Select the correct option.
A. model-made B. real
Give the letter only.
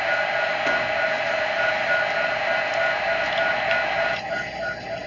B